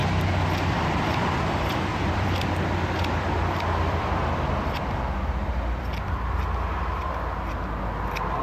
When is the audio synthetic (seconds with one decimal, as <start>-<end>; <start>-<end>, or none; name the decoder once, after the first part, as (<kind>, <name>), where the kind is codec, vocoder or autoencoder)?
1.9-6.4 (vocoder, BigVGAN v2)